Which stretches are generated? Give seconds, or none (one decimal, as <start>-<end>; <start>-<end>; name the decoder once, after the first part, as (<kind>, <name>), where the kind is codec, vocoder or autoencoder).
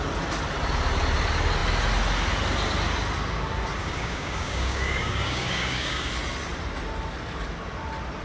3.8-6.1 (codec, DAC)